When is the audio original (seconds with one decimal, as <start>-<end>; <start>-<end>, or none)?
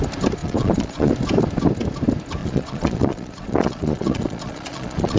0.0-0.4; 1.1-2.4